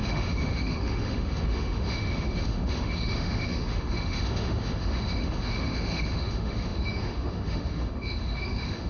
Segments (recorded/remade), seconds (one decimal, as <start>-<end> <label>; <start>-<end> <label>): 0.0-8.9 remade